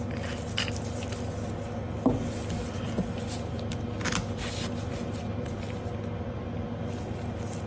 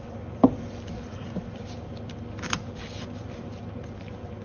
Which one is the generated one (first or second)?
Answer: second